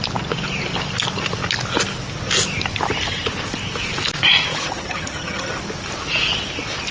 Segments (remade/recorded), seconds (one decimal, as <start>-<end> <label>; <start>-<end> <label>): 0.0-4.5 recorded; 4.5-5.5 remade; 5.5-6.9 recorded